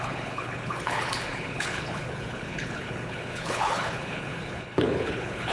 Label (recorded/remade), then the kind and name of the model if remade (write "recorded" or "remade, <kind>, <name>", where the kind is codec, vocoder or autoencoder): remade, codec, HILCodec